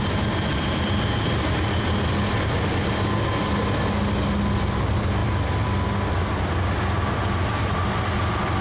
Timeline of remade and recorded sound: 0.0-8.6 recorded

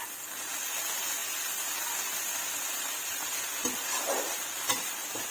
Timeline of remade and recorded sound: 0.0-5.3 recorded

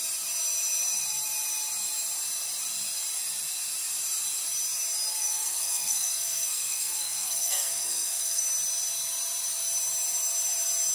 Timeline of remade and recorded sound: 0.0-5.2 recorded; 5.2-8.4 remade; 8.4-10.9 recorded

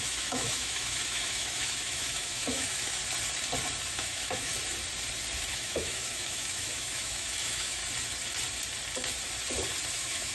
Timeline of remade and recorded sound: 0.0-3.0 remade; 3.0-3.9 recorded; 3.9-4.5 remade; 4.5-5.5 recorded; 5.5-7.8 remade; 7.8-9.9 recorded; 9.9-10.3 remade

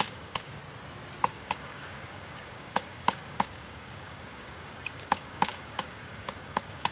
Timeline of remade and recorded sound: 0.0-0.6 remade; 0.6-1.3 recorded; 1.3-6.9 remade

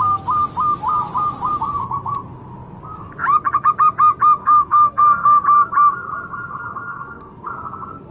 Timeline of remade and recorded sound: 0.0-4.4 recorded; 4.4-5.4 remade; 5.4-6.9 recorded; 6.9-7.5 remade; 7.5-8.1 recorded